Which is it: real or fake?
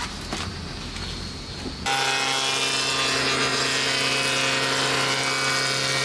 real